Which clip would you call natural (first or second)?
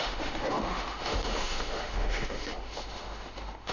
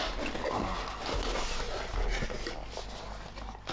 second